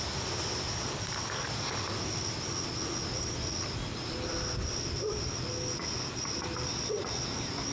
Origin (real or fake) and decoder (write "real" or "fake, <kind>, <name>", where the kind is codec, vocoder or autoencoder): real